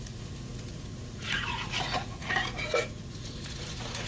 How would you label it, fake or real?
fake